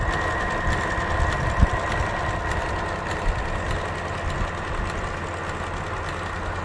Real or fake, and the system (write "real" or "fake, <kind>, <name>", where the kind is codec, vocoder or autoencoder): real